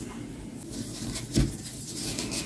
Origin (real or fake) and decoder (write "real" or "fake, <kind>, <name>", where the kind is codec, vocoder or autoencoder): real